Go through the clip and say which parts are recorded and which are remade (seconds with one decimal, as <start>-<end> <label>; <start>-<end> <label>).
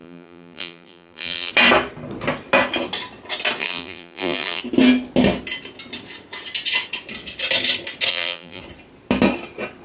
0.0-1.5 remade; 1.5-3.6 recorded; 3.6-4.6 remade; 4.6-8.1 recorded; 8.1-8.6 remade; 8.6-9.8 recorded